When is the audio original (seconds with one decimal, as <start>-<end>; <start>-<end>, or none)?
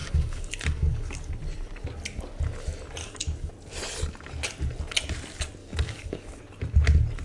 1.3-3.0; 3.5-5.6; 6.4-7.2